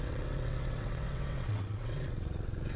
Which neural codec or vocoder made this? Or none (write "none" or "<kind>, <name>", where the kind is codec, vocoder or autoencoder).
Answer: vocoder, WaveNeXt